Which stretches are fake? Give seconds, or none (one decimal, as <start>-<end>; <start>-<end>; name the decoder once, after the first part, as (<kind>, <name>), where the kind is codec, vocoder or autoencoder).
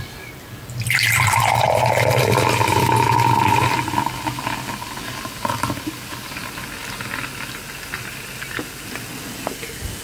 none